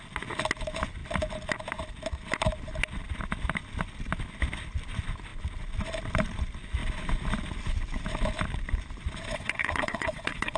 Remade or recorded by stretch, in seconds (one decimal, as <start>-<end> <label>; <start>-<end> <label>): 0.0-9.3 recorded; 9.3-10.6 remade